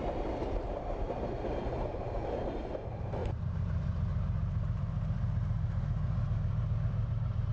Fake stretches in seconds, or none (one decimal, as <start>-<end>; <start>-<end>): 3.2-7.5